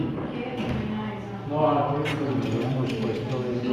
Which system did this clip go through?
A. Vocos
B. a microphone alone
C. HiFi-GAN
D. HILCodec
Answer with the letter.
B